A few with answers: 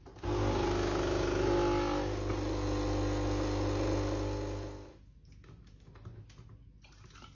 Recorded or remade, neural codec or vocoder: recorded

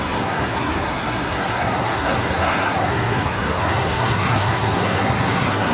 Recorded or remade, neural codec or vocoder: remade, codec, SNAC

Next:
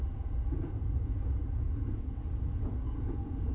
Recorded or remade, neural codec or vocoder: remade, vocoder, Vocos